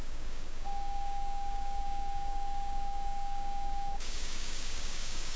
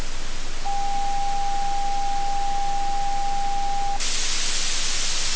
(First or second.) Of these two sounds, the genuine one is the second